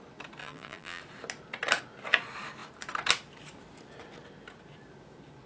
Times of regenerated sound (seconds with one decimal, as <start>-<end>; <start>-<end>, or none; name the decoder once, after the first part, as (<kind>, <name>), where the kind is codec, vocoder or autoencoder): 0.4-1.0 (vocoder, BigVGAN v2)